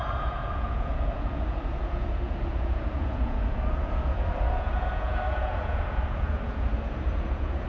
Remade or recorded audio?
remade